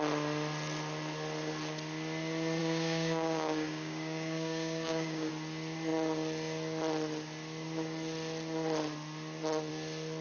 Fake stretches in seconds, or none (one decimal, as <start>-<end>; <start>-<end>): 2.6-5.3